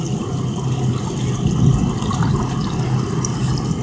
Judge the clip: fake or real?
real